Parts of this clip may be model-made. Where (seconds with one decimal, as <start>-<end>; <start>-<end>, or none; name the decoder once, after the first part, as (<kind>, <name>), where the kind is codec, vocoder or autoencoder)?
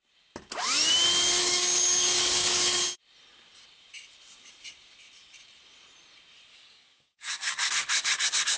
1.4-2.8 (codec, DAC); 6.5-7.7